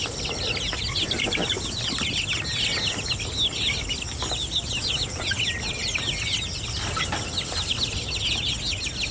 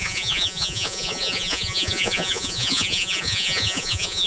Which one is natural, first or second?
first